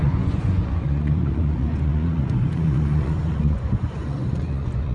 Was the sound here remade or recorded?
remade